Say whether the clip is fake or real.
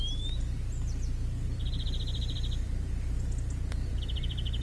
real